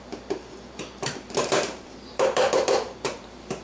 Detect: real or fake fake